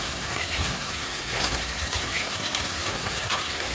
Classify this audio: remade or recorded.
remade